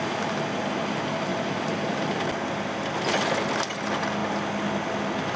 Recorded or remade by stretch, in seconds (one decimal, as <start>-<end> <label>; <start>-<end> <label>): 0.0-1.3 recorded; 1.3-2.0 remade; 2.0-5.4 recorded